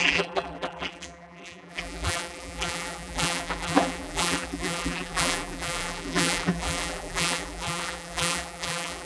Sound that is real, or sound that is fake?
fake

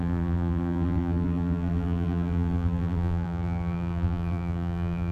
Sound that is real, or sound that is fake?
fake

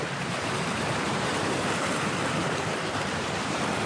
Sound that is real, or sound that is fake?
fake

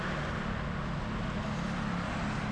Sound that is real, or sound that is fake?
real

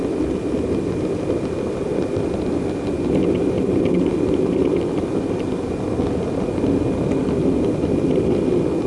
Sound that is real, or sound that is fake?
real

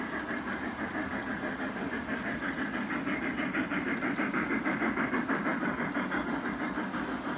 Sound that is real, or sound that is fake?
real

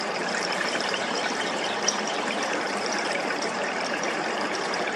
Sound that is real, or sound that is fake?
fake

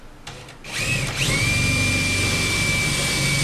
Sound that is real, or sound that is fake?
real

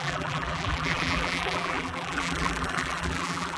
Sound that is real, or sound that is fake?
fake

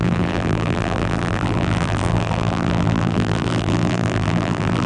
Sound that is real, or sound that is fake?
fake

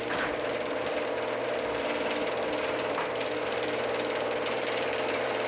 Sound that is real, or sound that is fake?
fake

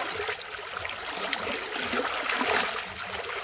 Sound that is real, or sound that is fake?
real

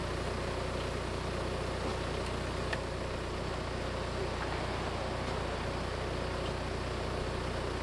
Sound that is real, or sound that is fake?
real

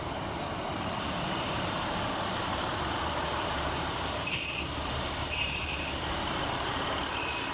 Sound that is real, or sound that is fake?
fake